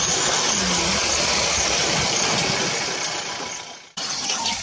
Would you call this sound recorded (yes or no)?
no